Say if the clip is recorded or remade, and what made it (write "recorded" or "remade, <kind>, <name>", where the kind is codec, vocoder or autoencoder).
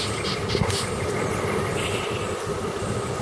recorded